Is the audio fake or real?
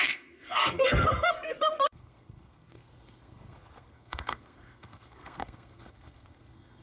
fake